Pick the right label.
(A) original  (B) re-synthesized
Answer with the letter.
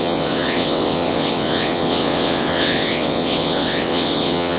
B